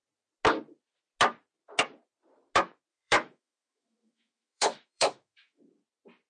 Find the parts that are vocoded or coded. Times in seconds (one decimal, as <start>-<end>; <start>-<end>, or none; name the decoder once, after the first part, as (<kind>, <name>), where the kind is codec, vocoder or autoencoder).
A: 2.9-5.6 (autoencoder, DAC-VAE)